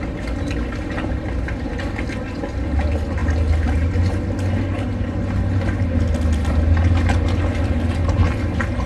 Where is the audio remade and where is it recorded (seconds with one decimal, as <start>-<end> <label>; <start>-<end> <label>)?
0.0-8.9 recorded